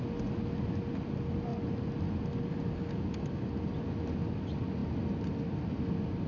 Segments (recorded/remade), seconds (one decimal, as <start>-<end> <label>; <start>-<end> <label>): 0.0-6.3 recorded